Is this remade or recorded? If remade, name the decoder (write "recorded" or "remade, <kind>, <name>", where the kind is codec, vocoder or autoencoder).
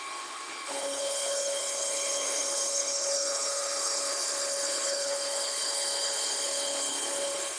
remade, codec, HILCodec